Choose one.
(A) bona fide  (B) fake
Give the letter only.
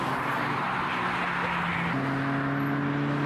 A